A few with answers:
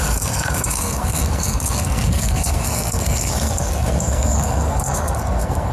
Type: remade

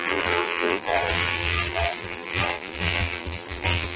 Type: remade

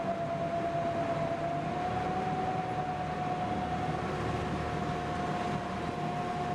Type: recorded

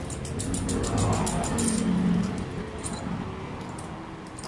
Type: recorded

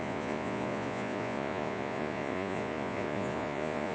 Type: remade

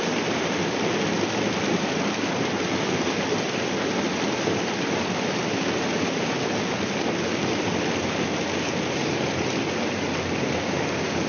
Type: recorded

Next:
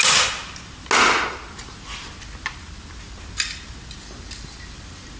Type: recorded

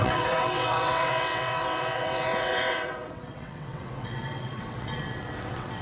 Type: remade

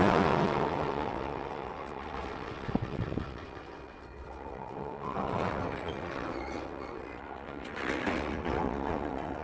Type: remade